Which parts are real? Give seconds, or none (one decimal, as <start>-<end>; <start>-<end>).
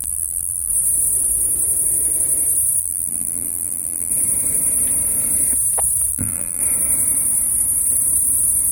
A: 0.7-2.8; 4.1-6.1; 6.6-8.7